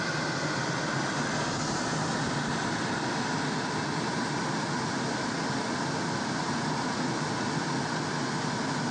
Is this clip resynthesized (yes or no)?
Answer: no